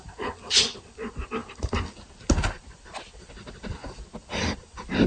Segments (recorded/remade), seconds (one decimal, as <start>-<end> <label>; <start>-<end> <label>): 0.0-5.1 recorded